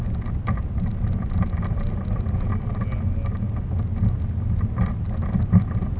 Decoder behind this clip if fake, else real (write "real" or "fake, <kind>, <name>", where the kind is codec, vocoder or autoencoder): real